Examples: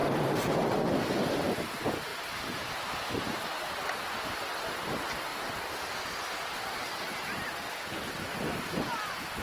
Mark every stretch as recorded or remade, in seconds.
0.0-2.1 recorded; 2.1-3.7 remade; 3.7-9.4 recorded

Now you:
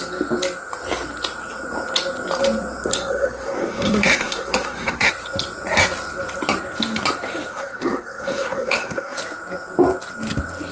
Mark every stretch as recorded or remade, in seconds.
0.0-2.9 recorded; 2.9-5.1 remade; 5.1-7.5 recorded; 7.5-9.2 remade; 9.2-10.7 recorded